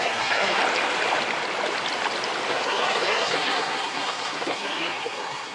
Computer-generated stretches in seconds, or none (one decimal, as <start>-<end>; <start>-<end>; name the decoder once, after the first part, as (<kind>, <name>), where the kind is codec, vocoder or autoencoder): 0.0-0.6 (codec, SNAC); 2.5-5.5